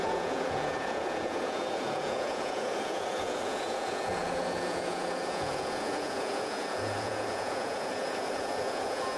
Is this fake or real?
fake